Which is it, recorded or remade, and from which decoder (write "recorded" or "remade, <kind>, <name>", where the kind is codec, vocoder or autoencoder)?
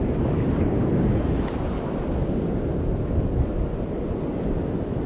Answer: recorded